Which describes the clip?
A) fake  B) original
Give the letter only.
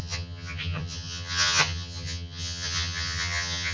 A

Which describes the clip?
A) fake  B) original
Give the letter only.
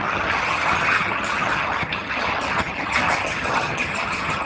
A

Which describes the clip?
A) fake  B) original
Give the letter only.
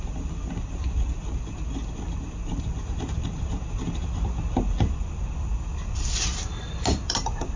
B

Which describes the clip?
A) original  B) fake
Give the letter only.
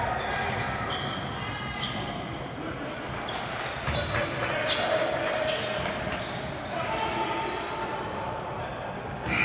A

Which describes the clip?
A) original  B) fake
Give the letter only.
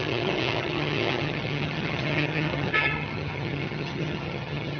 B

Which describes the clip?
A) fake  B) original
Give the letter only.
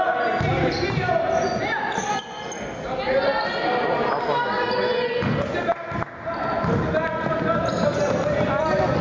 B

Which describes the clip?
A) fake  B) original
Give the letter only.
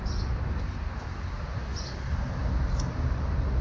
B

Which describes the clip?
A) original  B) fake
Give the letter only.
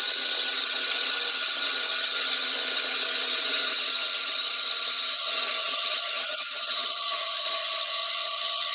B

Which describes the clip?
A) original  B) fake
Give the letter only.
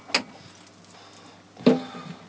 A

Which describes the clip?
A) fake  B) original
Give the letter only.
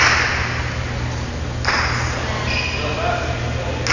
B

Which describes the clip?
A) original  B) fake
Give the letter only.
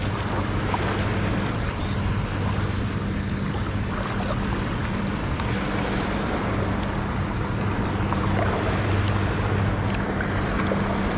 A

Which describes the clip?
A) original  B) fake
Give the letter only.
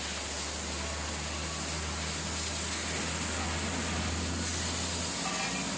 A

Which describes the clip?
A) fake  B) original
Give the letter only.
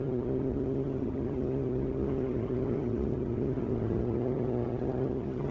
A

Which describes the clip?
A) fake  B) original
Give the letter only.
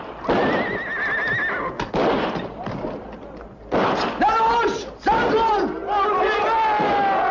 B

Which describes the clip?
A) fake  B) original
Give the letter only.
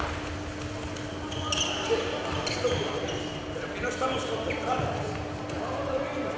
B